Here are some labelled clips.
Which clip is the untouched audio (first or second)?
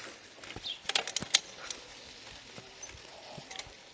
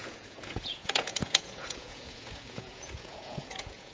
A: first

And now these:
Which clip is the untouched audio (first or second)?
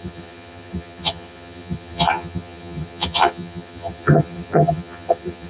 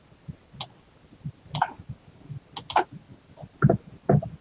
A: second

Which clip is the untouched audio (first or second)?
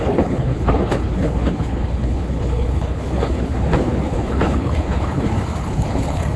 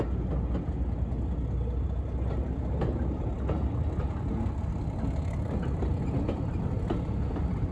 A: second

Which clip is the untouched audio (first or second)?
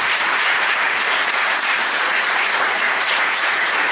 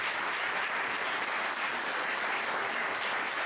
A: second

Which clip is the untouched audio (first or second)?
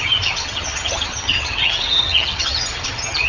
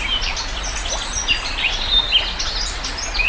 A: second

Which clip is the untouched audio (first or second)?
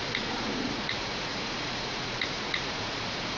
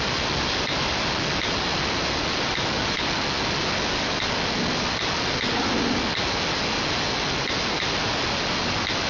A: second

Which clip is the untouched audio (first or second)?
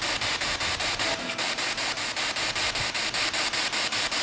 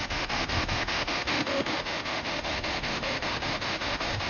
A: first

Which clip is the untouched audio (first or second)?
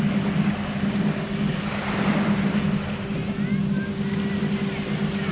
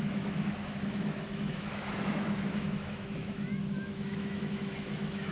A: first